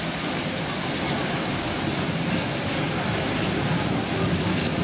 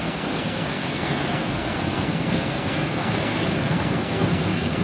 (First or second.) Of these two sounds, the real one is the first